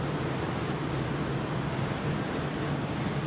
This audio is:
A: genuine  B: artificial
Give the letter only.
A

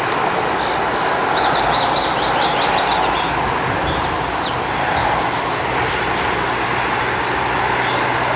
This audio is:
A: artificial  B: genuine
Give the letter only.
B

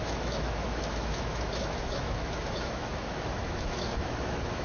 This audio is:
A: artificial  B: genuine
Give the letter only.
A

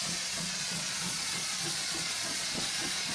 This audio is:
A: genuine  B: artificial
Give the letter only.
B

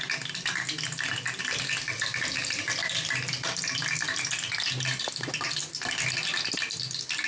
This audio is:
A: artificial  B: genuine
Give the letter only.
B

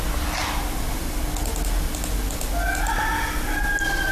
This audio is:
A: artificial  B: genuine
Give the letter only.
B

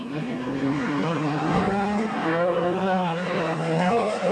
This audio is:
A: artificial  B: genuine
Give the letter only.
A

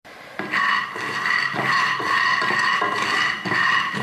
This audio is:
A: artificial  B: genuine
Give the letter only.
B